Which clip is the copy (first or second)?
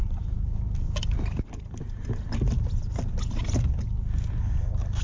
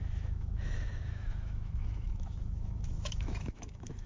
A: second